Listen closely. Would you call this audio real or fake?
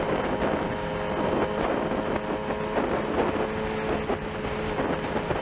real